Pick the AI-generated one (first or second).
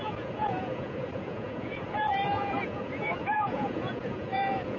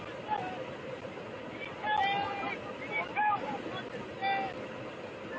first